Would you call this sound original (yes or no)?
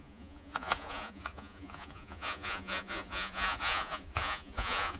no